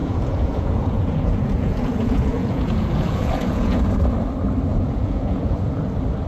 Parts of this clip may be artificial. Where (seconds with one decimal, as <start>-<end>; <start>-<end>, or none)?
0.0-3.8; 4.7-5.8